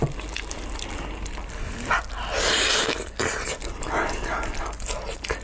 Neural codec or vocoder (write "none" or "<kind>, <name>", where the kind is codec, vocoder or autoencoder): none